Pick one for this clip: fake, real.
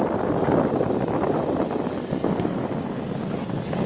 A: real